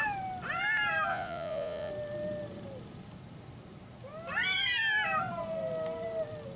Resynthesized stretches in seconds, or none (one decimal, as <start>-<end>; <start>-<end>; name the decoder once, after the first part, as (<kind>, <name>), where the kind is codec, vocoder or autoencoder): 1.1-1.9 (vocoder, Vocos)